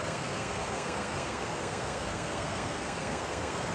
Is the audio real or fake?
fake